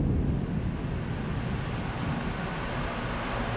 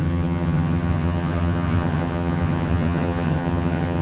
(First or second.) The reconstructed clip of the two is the second